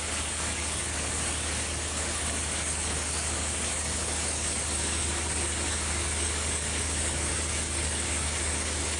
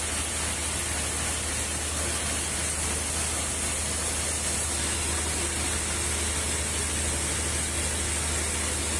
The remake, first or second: first